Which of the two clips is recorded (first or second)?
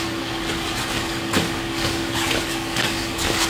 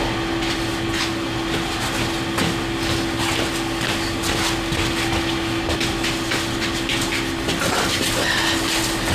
second